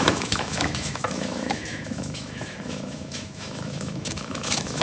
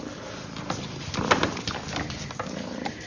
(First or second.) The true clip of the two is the second